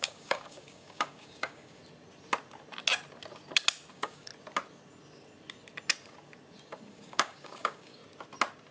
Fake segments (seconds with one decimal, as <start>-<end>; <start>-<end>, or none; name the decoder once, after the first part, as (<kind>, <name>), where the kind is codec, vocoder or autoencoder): 0.0-1.8 (codec, DAC); 3.9-4.3; 6.9-8.0